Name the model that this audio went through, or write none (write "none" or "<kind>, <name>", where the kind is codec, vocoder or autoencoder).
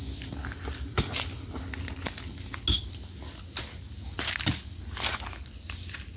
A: none